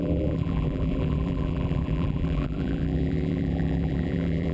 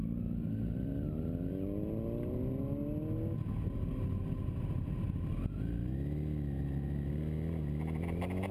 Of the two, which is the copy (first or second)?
first